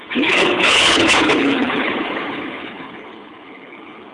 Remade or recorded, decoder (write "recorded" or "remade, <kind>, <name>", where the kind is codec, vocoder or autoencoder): remade, codec, HILCodec